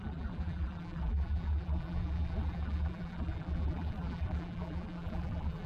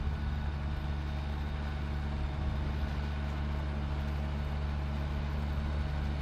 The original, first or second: second